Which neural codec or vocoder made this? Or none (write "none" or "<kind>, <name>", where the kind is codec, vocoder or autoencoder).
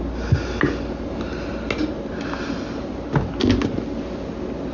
none